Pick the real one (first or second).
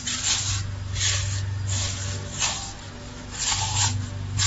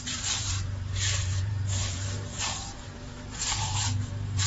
first